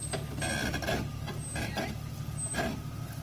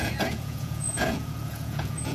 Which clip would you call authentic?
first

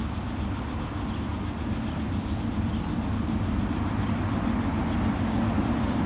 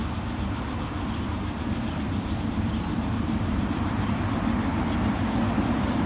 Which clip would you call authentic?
first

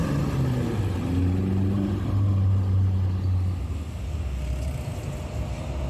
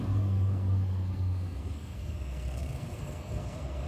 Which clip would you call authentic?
first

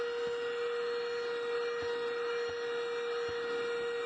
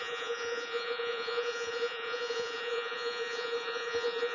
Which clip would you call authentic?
first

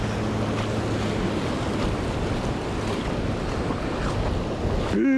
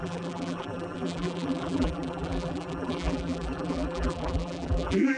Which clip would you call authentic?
first